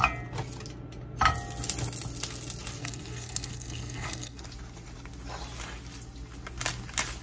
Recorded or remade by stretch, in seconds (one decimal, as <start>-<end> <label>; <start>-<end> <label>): 0.0-2.8 recorded; 2.8-4.4 remade; 4.4-7.2 recorded